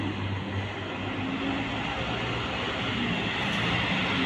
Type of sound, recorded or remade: recorded